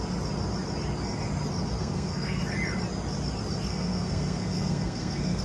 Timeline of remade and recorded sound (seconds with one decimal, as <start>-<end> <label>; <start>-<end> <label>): 0.0-1.8 recorded; 1.8-2.4 remade; 2.4-3.7 recorded; 3.7-5.4 remade